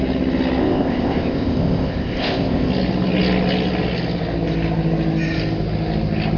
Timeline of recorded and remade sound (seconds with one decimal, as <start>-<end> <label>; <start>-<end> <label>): 0.0-0.6 recorded; 0.6-2.7 remade; 2.7-6.4 recorded